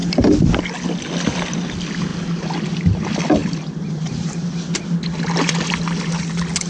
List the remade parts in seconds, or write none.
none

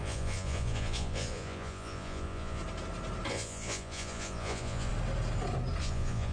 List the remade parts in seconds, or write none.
0.0-2.6; 3.3-4.9; 5.8-6.3

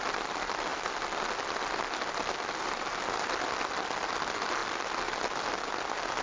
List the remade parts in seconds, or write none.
none

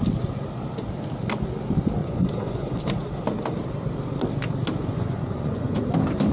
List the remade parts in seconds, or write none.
2.0-2.8; 4.8-5.8

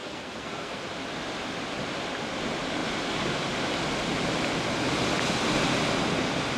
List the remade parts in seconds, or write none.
0.0-0.8

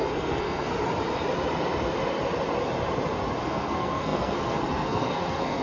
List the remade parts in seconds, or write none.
0.0-0.7; 3.4-5.6